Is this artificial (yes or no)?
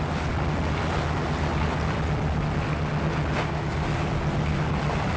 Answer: no